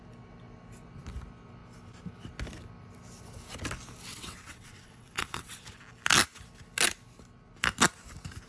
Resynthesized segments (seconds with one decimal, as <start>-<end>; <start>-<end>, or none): 4.1-5.6